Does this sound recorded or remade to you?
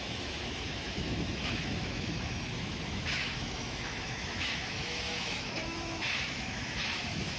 remade